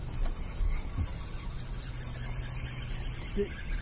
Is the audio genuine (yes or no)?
yes